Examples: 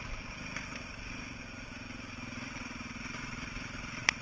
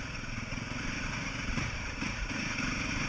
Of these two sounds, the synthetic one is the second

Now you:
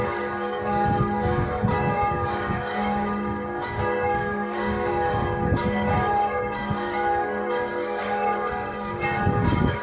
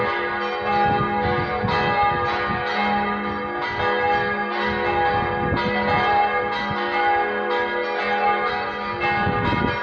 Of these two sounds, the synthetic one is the first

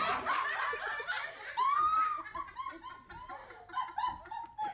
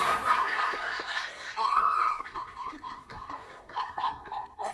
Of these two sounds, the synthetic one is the second